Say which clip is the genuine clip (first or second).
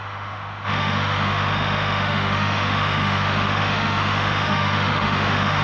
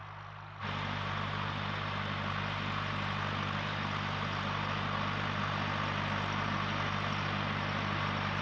second